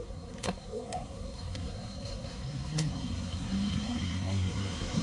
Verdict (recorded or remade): remade